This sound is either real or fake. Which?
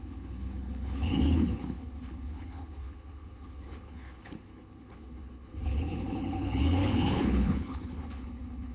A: fake